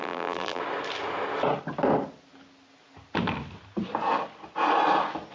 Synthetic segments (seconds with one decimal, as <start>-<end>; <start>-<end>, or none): 0.0-0.6